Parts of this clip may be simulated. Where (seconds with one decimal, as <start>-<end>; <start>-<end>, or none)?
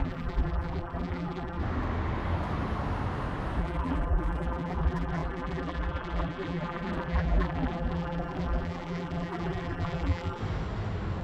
0.0-1.6; 3.6-10.4